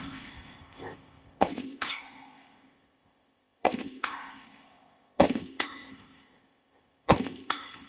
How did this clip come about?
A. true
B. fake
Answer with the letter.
B